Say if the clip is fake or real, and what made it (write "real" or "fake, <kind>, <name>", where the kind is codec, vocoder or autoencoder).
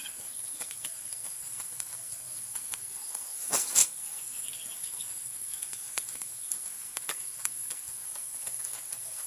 fake, codec, SNAC